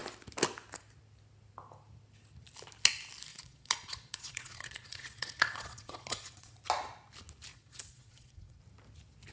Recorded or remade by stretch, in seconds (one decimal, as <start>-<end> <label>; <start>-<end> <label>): 0.0-3.3 recorded; 3.3-6.6 remade; 6.6-7.5 recorded; 7.5-8.6 remade; 8.6-9.3 recorded